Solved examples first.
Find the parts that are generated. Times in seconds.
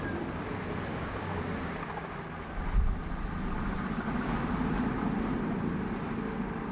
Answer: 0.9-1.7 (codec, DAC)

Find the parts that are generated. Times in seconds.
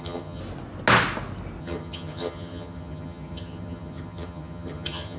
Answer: 0.0-0.4 (vocoder, HiFi-GAN); 1.6-5.2